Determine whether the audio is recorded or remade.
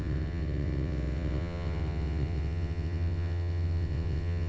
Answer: remade